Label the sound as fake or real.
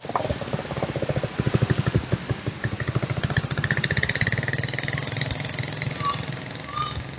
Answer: real